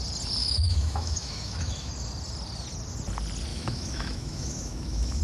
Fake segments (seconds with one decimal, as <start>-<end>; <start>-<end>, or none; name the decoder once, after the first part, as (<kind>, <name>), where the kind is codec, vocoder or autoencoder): 0.4-1.9 (autoencoder, DAC-VAE); 3.5-5.2